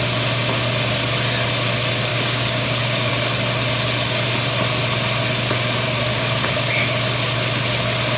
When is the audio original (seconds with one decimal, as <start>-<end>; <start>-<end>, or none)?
0.0-2.1; 3.1-6.1; 6.7-8.2